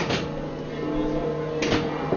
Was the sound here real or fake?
real